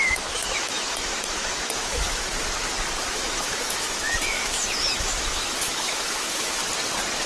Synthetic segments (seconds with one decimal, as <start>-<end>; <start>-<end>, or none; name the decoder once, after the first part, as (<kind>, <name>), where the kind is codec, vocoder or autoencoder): 0.0-2.3 (autoencoder, DAC-VAE); 3.1-6.6